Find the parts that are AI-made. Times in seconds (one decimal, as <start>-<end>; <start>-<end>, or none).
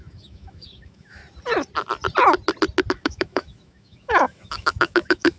0.0-1.2; 2.9-5.4